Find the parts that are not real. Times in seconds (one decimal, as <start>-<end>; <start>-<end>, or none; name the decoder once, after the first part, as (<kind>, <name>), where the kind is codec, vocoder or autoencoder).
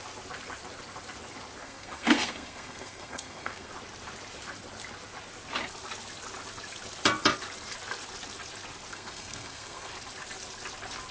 1.6-3.7 (codec, SNAC); 8.9-9.9